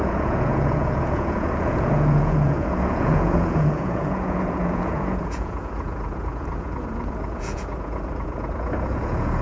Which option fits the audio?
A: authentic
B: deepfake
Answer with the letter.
B